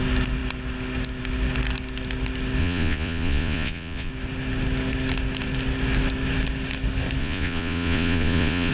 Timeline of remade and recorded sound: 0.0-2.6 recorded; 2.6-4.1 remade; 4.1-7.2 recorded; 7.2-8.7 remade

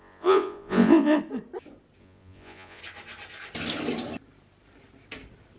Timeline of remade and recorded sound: 0.0-1.2 remade; 1.2-2.0 recorded; 2.0-2.8 remade; 2.8-5.6 recorded

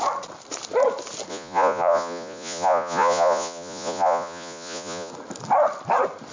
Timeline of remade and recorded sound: 0.0-1.3 recorded; 1.3-5.1 remade; 5.1-6.3 recorded

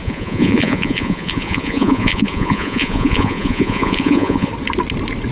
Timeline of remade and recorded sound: 0.0-4.5 remade; 4.5-5.3 recorded

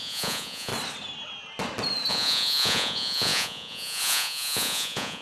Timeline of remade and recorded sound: 0.0-0.7 remade; 0.7-2.1 recorded; 2.1-5.2 remade

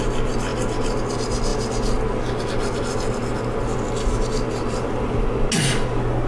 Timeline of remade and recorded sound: 0.0-6.3 recorded

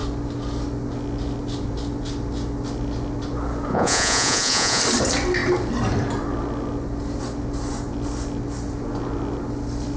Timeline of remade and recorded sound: 0.0-3.7 recorded; 3.7-4.8 remade; 4.8-10.0 recorded